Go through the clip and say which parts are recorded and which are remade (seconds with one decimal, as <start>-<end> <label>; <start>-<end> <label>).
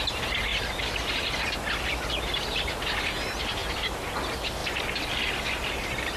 0.0-0.5 recorded; 0.5-1.2 remade; 1.2-3.6 recorded; 3.6-4.1 remade; 4.1-6.2 recorded